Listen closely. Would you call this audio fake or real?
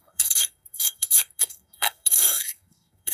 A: fake